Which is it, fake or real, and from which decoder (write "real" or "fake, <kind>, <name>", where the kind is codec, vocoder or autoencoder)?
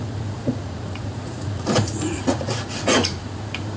fake, vocoder, Vocos